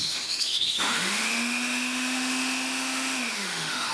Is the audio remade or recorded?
remade